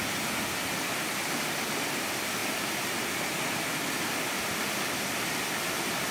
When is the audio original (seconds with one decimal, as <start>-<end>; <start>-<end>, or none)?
0.0-2.4; 3.3-6.1